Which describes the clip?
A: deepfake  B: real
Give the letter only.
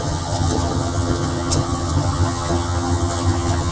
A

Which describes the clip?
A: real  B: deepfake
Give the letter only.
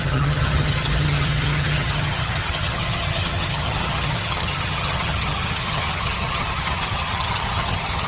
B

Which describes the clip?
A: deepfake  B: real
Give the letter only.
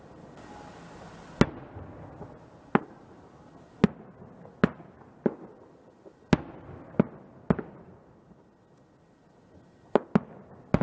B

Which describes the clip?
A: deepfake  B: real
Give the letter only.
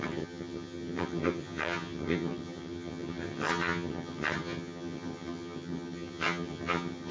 A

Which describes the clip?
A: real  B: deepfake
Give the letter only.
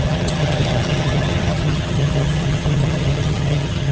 B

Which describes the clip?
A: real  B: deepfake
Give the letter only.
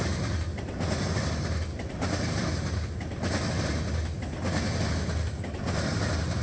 A